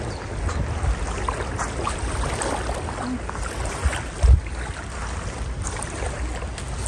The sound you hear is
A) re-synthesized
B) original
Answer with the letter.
B